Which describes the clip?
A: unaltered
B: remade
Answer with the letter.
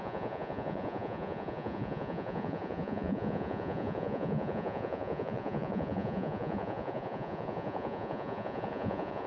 B